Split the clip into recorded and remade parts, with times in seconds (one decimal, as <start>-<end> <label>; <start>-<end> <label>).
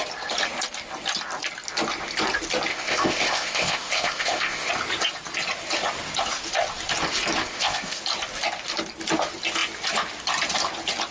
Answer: 0.0-2.7 recorded; 2.7-4.7 remade; 4.7-7.4 recorded; 7.4-8.0 remade; 8.0-11.1 recorded